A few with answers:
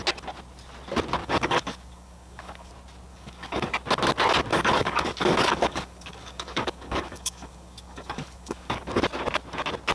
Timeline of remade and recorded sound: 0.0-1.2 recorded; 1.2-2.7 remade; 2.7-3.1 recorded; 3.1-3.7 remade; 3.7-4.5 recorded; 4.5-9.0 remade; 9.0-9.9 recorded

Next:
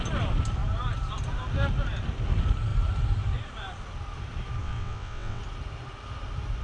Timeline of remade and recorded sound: 0.0-4.6 recorded; 4.6-5.4 remade; 5.4-6.6 recorded

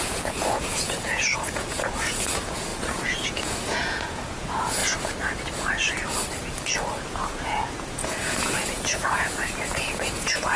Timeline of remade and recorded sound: 0.0-4.8 remade; 4.8-7.0 recorded; 7.0-10.6 remade

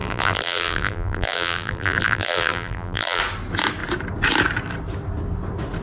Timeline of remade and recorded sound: 0.0-3.2 remade; 3.2-5.8 recorded